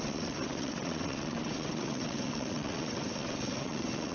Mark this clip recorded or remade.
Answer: remade